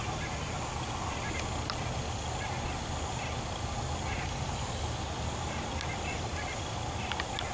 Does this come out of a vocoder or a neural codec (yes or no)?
no